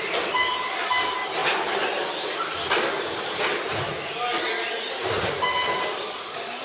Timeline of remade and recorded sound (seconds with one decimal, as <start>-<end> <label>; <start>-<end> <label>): 0.0-6.6 recorded